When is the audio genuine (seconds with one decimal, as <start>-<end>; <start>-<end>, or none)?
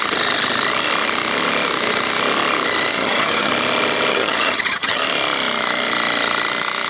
0.0-2.9; 3.5-4.1; 5.0-6.9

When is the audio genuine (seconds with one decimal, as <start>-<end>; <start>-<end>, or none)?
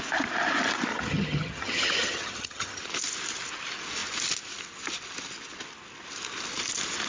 0.0-0.9; 2.8-7.1